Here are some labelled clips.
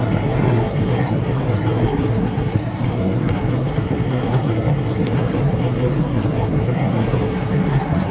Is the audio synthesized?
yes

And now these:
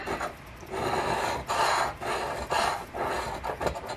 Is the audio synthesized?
no